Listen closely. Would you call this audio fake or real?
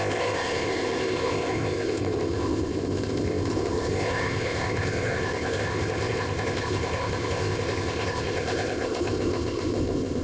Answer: fake